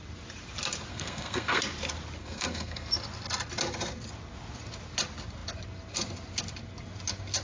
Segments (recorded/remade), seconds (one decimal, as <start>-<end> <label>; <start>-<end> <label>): 0.0-0.9 recorded; 0.9-1.6 remade; 1.6-2.2 recorded; 2.2-2.9 remade; 2.9-7.4 recorded